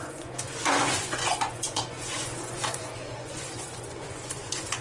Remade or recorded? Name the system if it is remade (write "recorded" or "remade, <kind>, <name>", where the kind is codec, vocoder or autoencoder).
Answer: remade, vocoder, Vocos